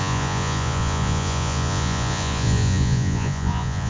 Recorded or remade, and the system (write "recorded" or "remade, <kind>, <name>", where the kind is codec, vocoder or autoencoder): remade, vocoder, Vocos